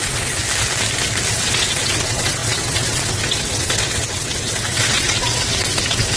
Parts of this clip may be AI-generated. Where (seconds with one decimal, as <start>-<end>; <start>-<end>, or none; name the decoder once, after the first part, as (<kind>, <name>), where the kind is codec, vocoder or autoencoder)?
0.0-0.4 (vocoder, WaveNeXt); 1.3-6.2